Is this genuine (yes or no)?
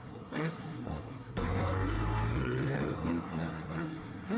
no